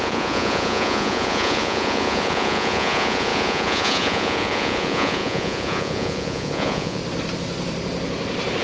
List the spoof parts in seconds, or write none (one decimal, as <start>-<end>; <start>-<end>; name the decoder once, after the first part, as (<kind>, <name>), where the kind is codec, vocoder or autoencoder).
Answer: 0.0-7.0 (vocoder, Vocos)